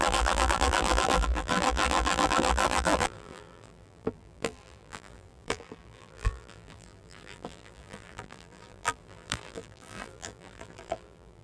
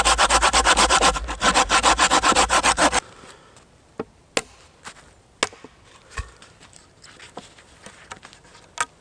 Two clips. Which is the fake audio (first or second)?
first